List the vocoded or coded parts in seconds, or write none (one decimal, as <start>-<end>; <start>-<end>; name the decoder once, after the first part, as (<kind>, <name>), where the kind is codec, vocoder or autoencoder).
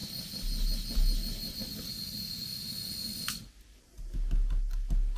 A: none